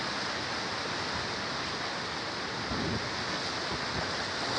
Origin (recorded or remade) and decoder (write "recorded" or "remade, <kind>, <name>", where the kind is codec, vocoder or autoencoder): recorded